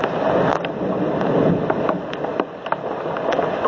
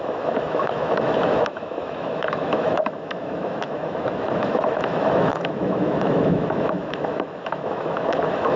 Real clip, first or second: first